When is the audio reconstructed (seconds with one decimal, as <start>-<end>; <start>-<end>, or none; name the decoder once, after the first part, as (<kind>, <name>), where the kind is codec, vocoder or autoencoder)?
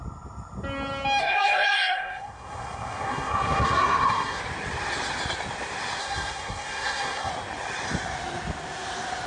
1.2-4.4 (codec, SNAC); 6.0-7.3